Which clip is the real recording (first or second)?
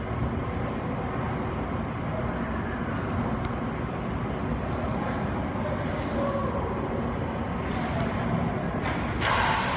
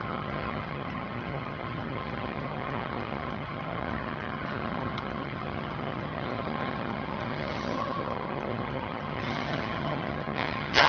first